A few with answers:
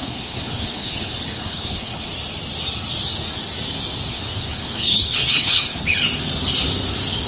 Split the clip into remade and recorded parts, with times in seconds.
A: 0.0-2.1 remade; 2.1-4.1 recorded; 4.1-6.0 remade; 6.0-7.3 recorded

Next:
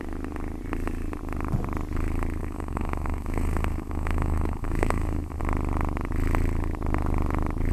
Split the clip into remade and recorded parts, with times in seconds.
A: 0.0-2.4 recorded; 2.4-5.4 remade; 5.4-7.7 recorded

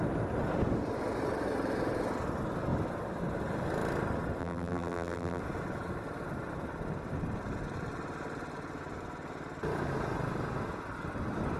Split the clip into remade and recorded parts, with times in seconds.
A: 0.0-4.4 recorded; 4.4-5.4 remade; 5.4-11.6 recorded

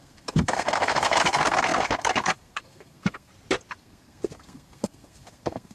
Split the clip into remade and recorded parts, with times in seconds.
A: 0.0-3.3 remade; 3.3-3.8 recorded; 3.8-5.7 remade

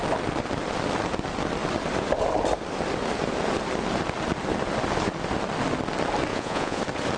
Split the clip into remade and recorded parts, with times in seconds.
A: 0.0-6.3 recorded; 6.3-6.8 remade; 6.8-7.2 recorded

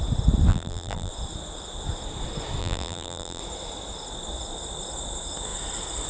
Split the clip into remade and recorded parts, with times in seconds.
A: 0.0-0.5 recorded; 0.5-1.1 remade; 1.1-2.6 recorded; 2.6-3.4 remade; 3.4-6.1 recorded

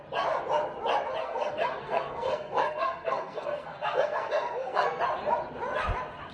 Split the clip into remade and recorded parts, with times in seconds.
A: 0.0-1.2 recorded; 1.2-5.0 remade; 5.0-6.3 recorded

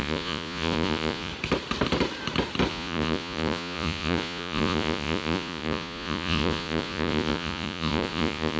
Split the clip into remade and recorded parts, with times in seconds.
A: 0.0-1.3 remade; 1.3-2.7 recorded; 2.7-8.6 remade